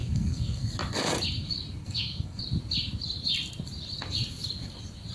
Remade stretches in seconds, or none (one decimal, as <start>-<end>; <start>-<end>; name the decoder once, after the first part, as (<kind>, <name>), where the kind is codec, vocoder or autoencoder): 0.0-0.7 (codec, SNAC); 1.8-2.4